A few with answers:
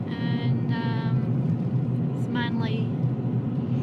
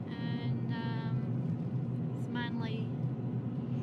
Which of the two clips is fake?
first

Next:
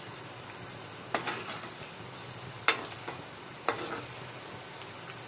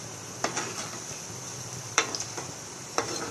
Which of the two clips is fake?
second